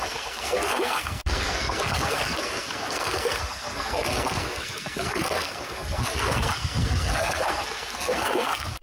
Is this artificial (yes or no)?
yes